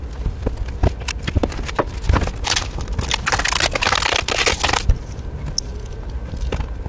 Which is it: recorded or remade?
recorded